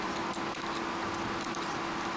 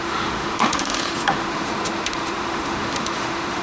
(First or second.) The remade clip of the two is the second